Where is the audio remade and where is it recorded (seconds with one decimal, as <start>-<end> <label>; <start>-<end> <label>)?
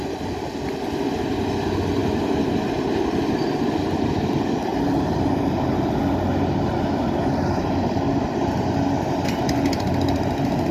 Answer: 0.0-2.0 recorded; 2.0-3.0 remade; 3.0-4.7 recorded; 4.7-6.0 remade; 6.0-7.2 recorded; 7.2-8.0 remade; 8.0-10.7 recorded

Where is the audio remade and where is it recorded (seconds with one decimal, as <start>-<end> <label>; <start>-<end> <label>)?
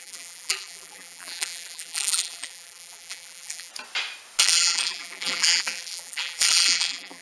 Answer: 0.0-3.7 remade; 3.7-4.4 recorded; 4.4-7.2 remade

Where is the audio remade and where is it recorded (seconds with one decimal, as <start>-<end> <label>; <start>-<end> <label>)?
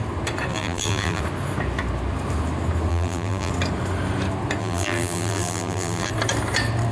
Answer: 0.0-0.5 recorded; 0.5-1.2 remade; 1.2-2.9 recorded; 2.9-3.5 remade; 3.5-4.6 recorded; 4.6-6.1 remade; 6.1-6.9 recorded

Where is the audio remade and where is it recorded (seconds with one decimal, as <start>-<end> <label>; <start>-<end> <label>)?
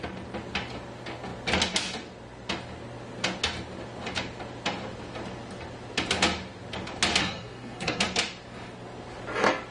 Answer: 0.0-7.2 recorded; 7.2-8.0 remade; 8.0-9.7 recorded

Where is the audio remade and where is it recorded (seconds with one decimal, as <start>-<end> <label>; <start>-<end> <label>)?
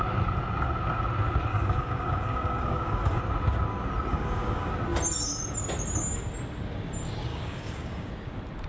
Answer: 0.0-1.5 recorded; 1.5-3.2 remade; 3.2-4.1 recorded; 4.1-4.7 remade; 4.7-7.3 recorded; 7.3-8.1 remade; 8.1-8.7 recorded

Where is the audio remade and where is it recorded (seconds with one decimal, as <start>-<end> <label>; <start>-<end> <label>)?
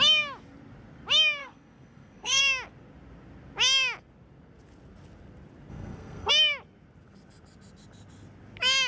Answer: 0.0-1.4 recorded; 1.4-2.4 remade; 2.4-5.7 recorded; 5.7-6.3 remade; 6.3-8.9 recorded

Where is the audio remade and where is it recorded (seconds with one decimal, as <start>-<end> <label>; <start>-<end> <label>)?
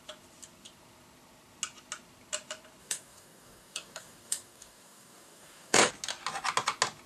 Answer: 0.0-2.8 recorded; 2.8-5.9 remade; 5.9-7.1 recorded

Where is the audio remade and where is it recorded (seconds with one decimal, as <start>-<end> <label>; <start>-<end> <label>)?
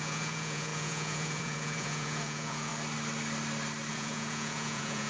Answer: 0.0-2.7 remade; 2.7-3.9 recorded; 3.9-5.1 remade